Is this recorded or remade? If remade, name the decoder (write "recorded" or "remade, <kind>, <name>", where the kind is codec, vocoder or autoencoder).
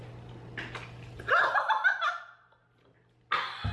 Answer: recorded